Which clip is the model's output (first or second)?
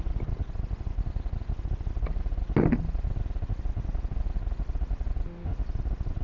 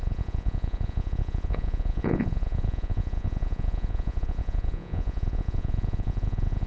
second